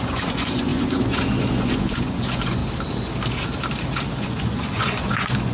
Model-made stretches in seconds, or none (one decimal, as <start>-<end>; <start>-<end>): 0.0-2.6; 4.1-5.5